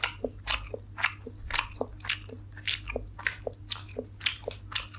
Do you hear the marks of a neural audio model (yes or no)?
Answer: no